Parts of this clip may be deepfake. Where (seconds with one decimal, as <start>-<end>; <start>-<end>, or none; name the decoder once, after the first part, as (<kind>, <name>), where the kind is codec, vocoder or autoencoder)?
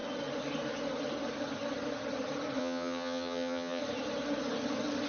2.6-3.8 (vocoder, HiFi-GAN)